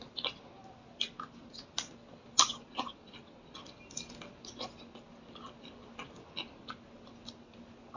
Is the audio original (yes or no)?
yes